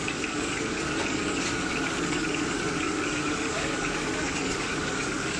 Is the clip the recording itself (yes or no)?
no